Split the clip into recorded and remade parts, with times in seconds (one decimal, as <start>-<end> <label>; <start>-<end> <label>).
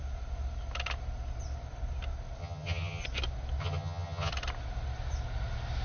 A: 0.0-2.4 recorded; 2.4-3.0 remade; 3.0-3.6 recorded; 3.6-4.3 remade; 4.3-5.8 recorded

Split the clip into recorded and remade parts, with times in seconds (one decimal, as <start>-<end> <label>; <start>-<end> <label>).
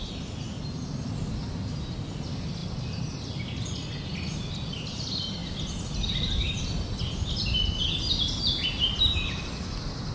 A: 0.0-10.1 recorded